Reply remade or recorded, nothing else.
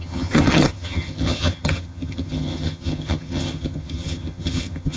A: remade